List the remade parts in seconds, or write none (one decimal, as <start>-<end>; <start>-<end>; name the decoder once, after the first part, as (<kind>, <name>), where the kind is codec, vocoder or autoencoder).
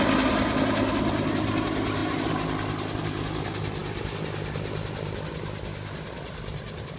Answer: none